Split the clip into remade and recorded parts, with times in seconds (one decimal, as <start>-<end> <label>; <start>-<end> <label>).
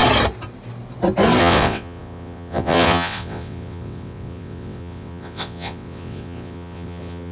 0.0-1.4 recorded; 1.4-7.3 remade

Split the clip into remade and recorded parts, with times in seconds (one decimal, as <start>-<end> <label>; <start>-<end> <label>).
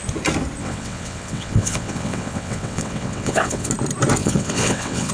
0.0-0.6 recorded; 0.6-3.7 remade; 3.7-4.2 recorded; 4.2-5.1 remade